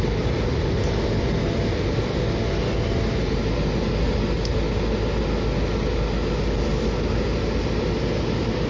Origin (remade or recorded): recorded